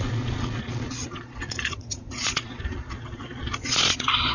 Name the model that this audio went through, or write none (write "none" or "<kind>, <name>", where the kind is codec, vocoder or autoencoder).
vocoder, Vocos